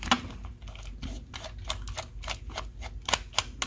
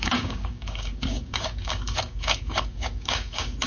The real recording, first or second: first